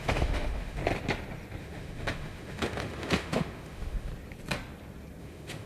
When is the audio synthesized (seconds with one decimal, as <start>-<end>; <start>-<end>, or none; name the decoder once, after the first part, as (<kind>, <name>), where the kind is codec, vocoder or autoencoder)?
0.0-0.8 (autoencoder, DAC-VAE); 1.6-4.1; 5.2-5.7

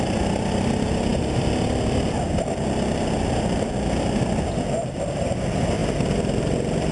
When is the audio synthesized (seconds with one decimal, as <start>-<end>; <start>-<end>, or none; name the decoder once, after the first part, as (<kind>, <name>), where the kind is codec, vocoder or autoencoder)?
none

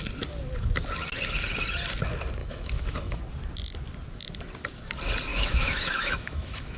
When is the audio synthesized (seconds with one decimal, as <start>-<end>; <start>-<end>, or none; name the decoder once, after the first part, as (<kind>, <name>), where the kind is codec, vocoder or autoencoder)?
2.4-3.2 (autoencoder, DAC-VAE); 5.3-6.8

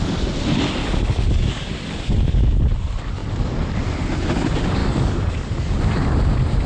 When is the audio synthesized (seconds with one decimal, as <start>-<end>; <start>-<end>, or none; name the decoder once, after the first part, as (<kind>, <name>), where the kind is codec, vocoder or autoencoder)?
0.8-2.6 (codec, DAC); 4.8-5.8